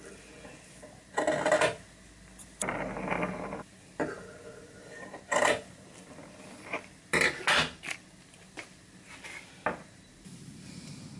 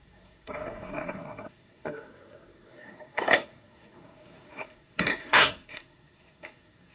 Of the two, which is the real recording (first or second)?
first